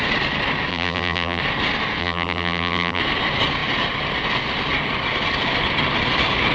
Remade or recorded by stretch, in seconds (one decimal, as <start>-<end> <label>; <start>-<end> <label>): 0.0-0.7 recorded; 0.7-1.4 remade; 1.4-2.0 recorded; 2.0-3.0 remade; 3.0-6.5 recorded